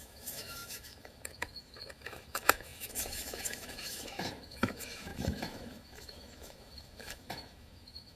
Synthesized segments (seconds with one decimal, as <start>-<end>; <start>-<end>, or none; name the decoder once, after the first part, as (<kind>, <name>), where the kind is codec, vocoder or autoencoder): 0.0-8.2 (autoencoder, DAC-VAE)